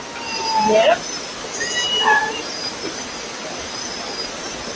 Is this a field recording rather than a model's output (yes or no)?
yes